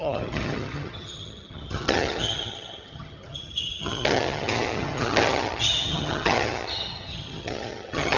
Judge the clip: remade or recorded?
remade